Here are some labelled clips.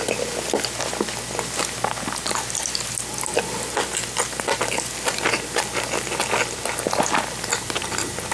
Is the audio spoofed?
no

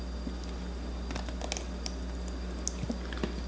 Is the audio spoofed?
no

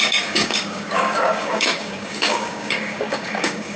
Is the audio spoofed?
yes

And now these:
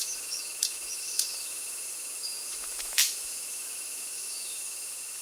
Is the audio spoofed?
yes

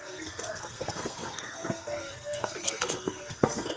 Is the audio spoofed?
yes